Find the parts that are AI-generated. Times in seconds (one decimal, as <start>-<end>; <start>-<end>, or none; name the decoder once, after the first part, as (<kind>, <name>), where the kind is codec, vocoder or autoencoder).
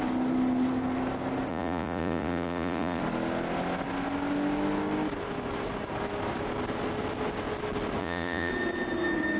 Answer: 1.5-3.0 (vocoder, Vocos); 8.0-8.5